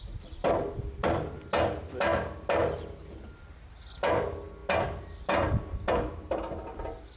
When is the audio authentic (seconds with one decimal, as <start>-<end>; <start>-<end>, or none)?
0.0-7.2